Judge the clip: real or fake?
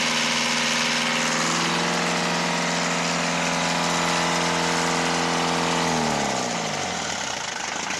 real